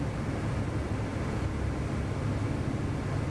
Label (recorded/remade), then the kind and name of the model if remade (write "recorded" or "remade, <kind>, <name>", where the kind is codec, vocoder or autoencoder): recorded